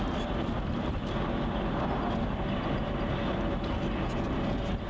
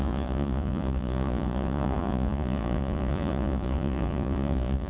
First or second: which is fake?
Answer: second